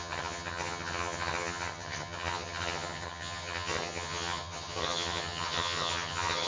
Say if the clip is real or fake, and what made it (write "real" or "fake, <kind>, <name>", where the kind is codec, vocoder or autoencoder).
fake, vocoder, HiFi-GAN